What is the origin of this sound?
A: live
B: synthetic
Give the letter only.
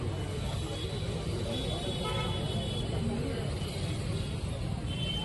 A